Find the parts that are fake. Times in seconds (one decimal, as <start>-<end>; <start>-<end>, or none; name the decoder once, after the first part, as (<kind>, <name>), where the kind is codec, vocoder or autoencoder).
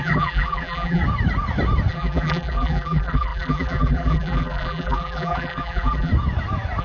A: 0.0-1.0 (vocoder, BigVGAN v2); 1.9-6.1